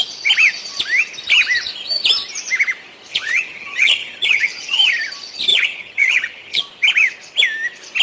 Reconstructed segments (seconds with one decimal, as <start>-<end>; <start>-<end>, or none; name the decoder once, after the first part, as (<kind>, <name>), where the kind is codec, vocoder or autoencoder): 3.1-4.9 (vocoder, HiFi-GAN); 5.5-6.6